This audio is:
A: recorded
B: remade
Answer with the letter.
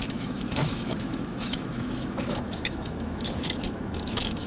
B